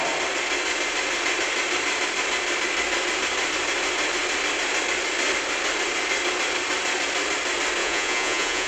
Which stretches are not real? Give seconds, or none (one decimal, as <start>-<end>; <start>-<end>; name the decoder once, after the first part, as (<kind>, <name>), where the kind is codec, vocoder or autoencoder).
7.8-8.7 (vocoder, Vocos)